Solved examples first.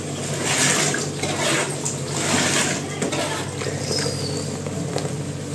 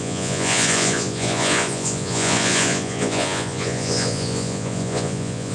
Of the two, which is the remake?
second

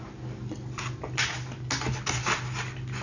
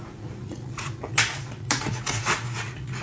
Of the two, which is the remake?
second